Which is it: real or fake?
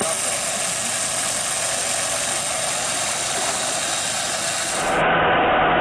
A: real